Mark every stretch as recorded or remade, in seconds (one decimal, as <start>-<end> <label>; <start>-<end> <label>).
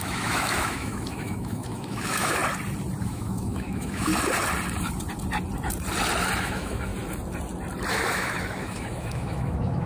0.0-2.4 remade; 2.4-3.0 recorded; 3.0-4.1 remade; 4.1-6.4 recorded; 6.4-6.9 remade; 6.9-7.9 recorded; 7.9-9.9 remade